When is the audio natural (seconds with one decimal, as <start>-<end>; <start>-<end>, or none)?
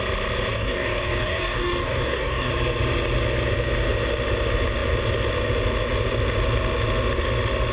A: 0.0-0.5; 2.5-7.7